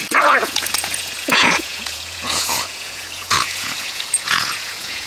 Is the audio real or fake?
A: fake